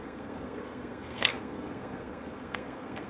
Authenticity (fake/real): fake